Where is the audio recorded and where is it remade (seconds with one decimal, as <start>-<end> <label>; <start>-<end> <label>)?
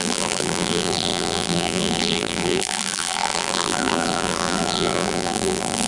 0.0-5.9 remade